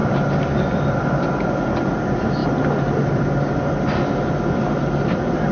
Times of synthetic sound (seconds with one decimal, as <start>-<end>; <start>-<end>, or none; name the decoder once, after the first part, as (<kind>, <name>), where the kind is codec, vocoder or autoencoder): none